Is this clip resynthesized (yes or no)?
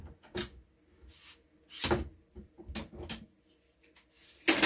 no